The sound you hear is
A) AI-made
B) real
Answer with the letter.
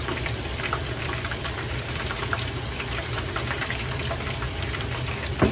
A